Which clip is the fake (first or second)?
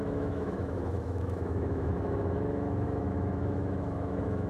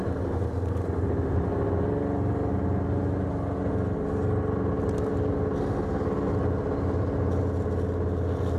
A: first